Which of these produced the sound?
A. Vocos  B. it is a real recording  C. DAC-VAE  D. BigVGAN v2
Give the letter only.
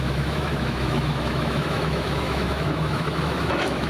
C